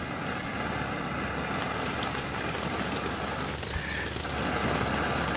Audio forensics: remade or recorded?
recorded